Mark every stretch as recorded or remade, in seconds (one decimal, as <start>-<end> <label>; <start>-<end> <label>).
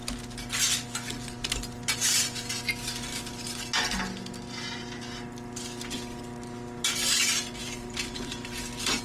0.0-7.6 recorded; 7.6-8.6 remade; 8.6-9.0 recorded